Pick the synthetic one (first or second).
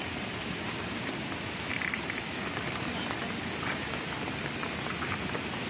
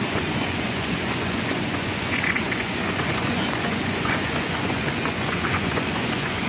second